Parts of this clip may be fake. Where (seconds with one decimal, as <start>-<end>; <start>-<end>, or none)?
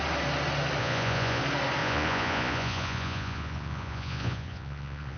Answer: 0.8-1.4; 1.8-5.2